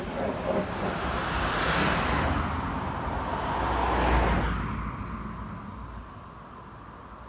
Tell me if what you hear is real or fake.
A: real